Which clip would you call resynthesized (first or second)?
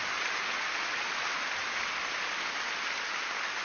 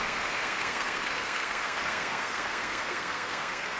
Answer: second